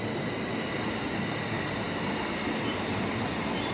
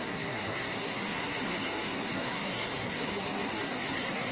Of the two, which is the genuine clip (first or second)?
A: first